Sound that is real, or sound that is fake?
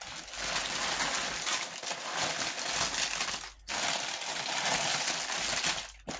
real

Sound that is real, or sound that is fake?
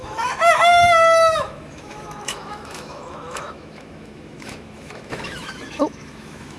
fake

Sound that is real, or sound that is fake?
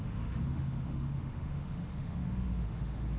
fake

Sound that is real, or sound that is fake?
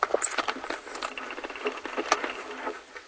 real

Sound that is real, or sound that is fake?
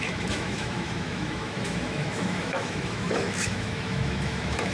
fake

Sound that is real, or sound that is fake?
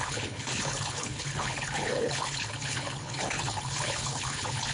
fake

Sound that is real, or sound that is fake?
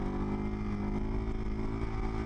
real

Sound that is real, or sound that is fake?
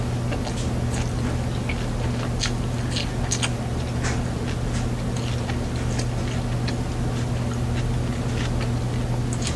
real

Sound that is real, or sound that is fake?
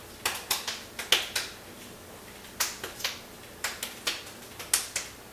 real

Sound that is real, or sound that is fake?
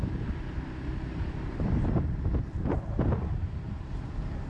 fake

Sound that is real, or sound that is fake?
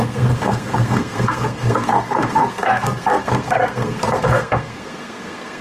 fake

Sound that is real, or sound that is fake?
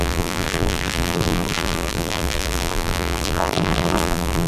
fake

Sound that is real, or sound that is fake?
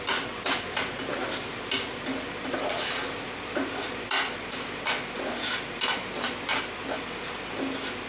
real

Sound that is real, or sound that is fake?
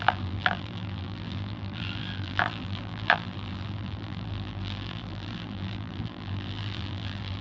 fake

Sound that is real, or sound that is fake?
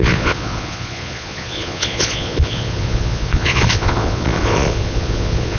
fake